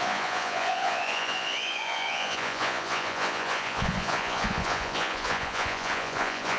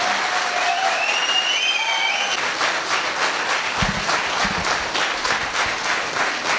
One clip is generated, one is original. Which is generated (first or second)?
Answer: first